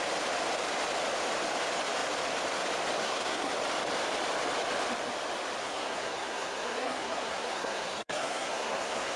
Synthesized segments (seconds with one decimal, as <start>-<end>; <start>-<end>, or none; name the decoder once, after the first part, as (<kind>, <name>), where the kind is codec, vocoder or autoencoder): 3.0-3.5 (codec, SNAC); 5.6-9.2